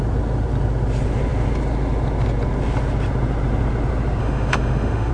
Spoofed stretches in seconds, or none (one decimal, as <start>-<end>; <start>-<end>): 4.2-5.1